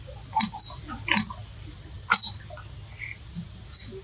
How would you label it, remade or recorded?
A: recorded